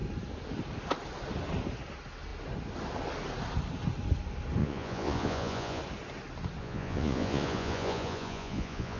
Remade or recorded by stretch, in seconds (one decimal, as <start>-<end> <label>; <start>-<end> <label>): 0.0-4.6 recorded; 4.6-5.8 remade; 5.8-6.6 recorded; 6.6-9.0 remade